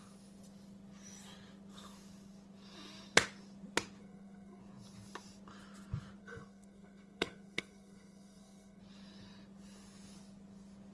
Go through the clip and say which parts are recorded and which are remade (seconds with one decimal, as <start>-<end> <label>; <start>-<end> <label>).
0.0-4.0 recorded; 4.0-4.6 remade; 4.6-6.2 recorded; 6.2-8.8 remade; 8.8-10.9 recorded